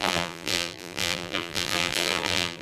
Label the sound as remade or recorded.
remade